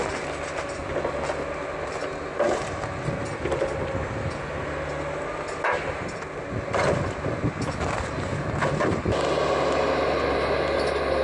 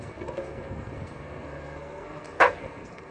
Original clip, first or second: first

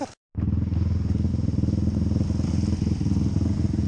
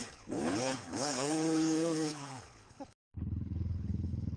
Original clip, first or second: first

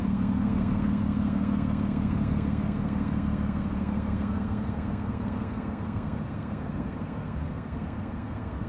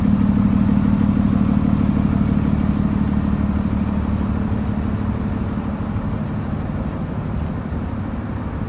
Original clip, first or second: second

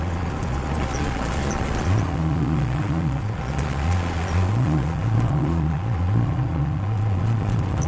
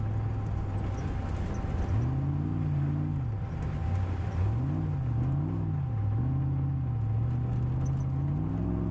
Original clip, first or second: second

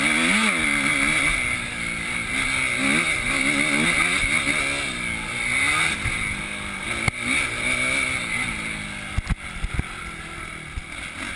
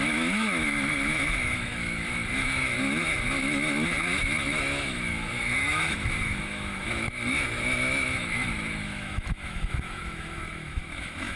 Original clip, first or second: first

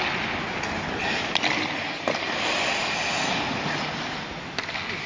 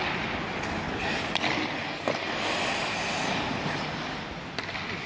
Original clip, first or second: first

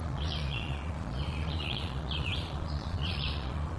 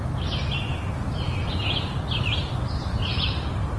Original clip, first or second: second